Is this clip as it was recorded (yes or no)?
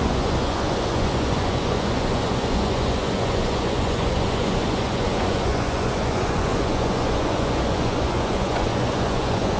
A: no